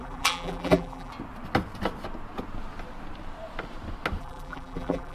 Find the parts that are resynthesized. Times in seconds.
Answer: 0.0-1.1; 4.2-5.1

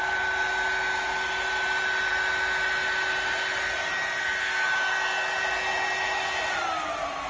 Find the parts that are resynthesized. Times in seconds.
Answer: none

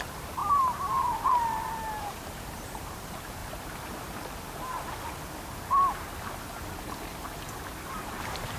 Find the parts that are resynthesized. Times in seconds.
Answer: 0.0-3.4; 7.9-8.6